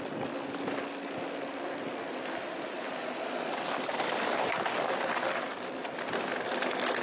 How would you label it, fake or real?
real